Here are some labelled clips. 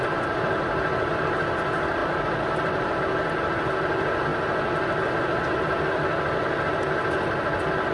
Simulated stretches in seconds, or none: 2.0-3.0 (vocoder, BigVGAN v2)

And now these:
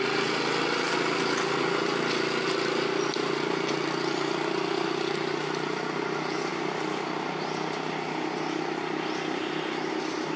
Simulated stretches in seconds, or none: none

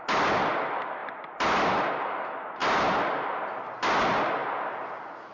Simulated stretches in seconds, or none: 1.0-1.9 (vocoder, BigVGAN v2)

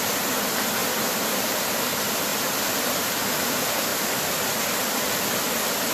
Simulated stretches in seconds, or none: none